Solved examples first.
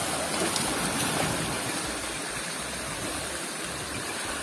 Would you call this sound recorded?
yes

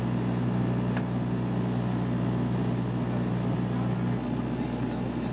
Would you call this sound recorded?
yes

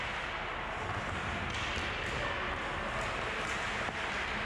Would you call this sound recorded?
yes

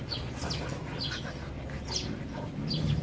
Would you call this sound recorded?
yes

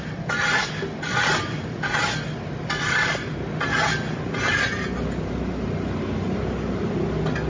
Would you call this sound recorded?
yes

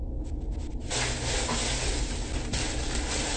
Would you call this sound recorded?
yes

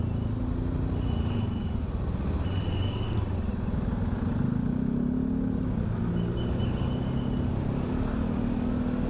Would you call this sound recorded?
yes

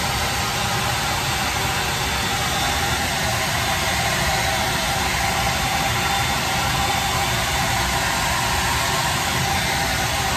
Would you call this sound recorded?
yes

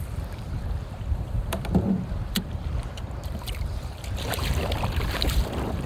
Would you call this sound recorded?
no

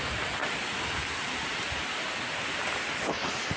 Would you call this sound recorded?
yes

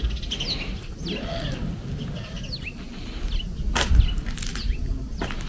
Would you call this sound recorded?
yes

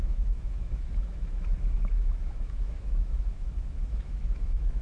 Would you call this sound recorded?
no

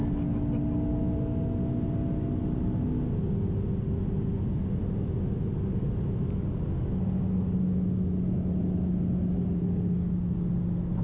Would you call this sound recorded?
yes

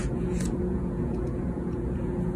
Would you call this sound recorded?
no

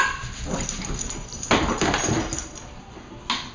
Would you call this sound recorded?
yes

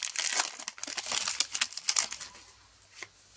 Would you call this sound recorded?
yes